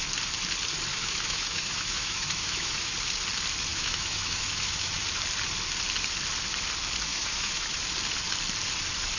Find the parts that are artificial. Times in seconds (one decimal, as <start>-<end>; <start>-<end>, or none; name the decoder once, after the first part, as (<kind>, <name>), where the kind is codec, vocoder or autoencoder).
0.9-2.9 (autoencoder, DAC-VAE); 3.7-5.0; 7.1-7.7